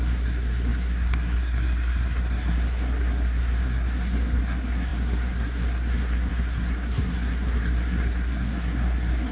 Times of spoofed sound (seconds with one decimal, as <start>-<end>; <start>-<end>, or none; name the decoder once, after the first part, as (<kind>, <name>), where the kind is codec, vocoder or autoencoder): 0.0-9.3 (codec, SNAC)